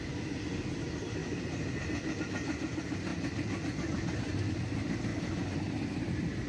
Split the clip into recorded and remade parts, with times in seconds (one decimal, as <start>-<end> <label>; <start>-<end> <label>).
0.0-6.5 recorded